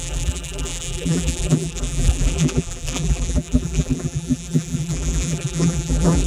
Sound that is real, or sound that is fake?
fake